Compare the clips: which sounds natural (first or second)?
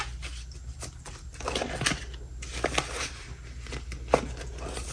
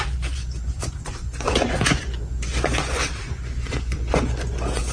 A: first